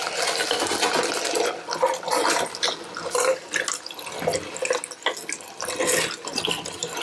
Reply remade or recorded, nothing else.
recorded